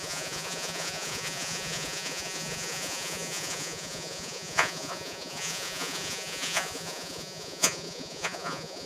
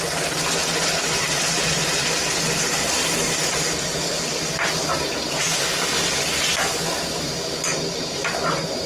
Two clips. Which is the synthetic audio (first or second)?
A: first